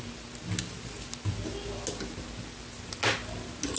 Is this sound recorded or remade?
recorded